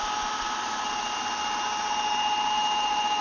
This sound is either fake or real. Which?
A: real